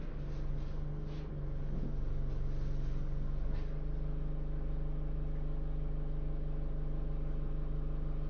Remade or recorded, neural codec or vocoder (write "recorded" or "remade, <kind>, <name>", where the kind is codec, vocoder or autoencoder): recorded